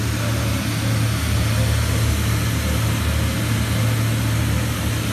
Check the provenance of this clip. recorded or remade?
recorded